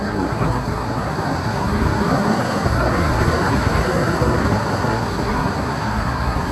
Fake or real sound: fake